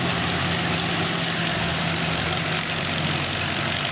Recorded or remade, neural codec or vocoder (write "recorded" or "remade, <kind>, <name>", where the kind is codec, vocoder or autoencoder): recorded